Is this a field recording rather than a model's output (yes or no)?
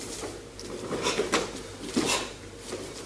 yes